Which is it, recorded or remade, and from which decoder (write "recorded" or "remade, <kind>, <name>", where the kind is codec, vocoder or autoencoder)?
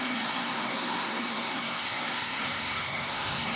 remade, codec, SNAC